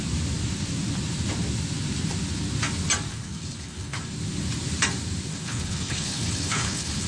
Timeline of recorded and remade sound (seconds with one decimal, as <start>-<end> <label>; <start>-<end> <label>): 0.0-3.1 recorded; 3.1-4.0 remade; 4.0-5.3 recorded; 5.3-7.1 remade